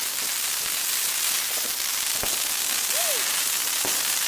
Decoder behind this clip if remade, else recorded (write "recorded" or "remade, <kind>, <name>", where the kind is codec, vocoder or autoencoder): recorded